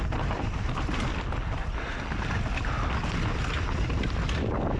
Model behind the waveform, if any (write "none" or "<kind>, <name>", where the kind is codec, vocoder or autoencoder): none